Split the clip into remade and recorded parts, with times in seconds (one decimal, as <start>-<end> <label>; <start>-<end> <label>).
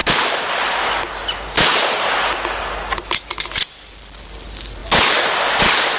0.0-6.0 recorded